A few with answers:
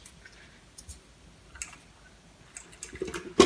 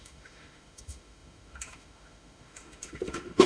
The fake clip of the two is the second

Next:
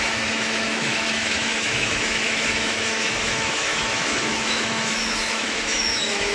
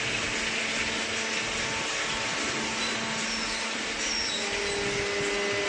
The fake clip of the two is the first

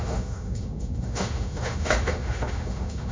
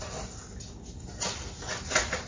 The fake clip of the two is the first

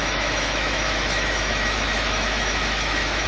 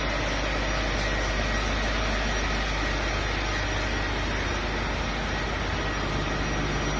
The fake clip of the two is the first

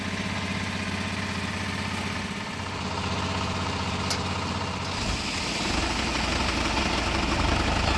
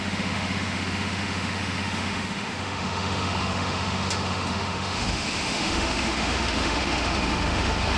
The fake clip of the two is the second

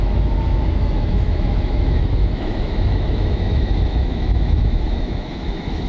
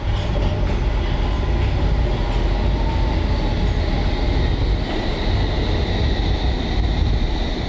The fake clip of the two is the first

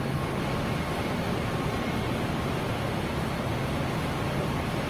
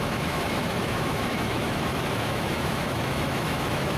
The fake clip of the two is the second